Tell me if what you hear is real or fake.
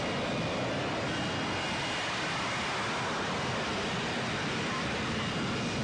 real